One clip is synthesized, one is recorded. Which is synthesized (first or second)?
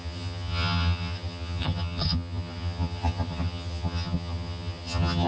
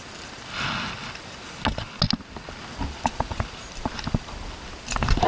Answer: first